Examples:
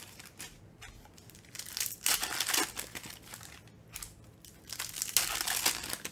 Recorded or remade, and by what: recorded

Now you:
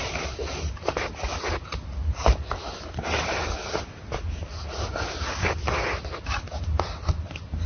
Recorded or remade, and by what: recorded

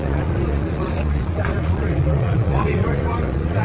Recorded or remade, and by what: remade, vocoder, Vocos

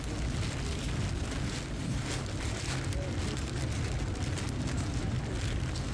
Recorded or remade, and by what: recorded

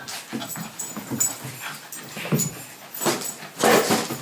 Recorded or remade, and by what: recorded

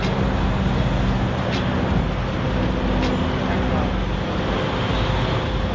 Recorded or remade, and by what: recorded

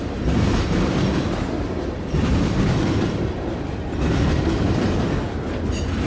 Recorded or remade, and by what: recorded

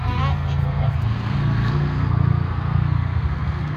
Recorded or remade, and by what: remade, codec, SNAC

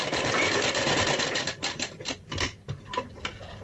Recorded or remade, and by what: remade, vocoder, BigVGAN v2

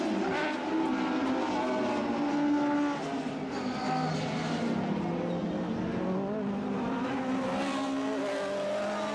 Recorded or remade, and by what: recorded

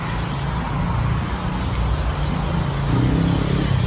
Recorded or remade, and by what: recorded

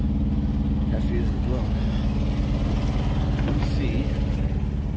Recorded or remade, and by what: recorded